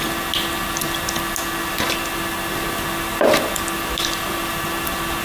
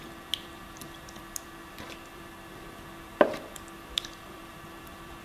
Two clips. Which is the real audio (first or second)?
first